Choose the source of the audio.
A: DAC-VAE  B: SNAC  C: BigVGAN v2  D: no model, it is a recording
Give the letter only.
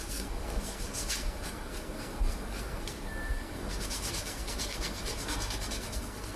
B